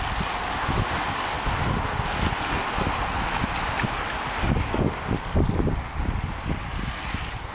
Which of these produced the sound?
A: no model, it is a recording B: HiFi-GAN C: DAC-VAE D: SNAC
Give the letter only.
A